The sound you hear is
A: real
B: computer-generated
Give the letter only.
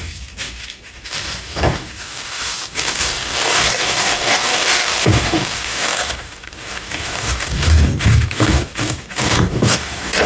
B